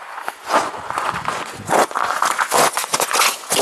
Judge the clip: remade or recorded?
remade